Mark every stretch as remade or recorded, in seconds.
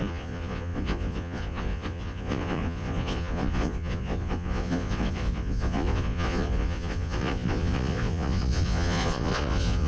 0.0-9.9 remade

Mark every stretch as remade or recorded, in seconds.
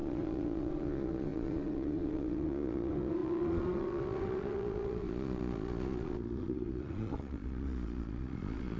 0.0-8.8 remade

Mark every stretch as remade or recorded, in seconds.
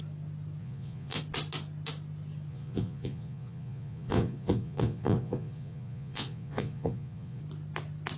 0.0-0.6 recorded; 0.6-1.2 remade; 1.2-2.5 recorded; 2.5-7.4 remade; 7.4-8.2 recorded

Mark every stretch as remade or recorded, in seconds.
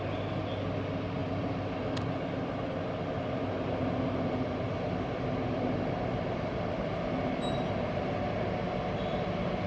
0.0-9.7 recorded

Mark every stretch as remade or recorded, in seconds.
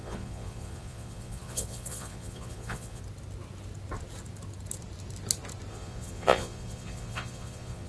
0.0-3.0 remade; 3.0-5.7 recorded; 5.7-7.9 remade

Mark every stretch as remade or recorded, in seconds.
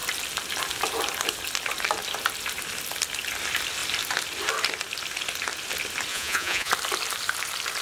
0.0-6.1 recorded; 6.1-6.7 remade; 6.7-7.8 recorded